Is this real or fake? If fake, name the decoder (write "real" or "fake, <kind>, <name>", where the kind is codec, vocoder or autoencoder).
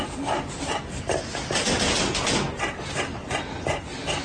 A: real